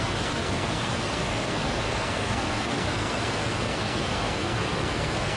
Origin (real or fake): fake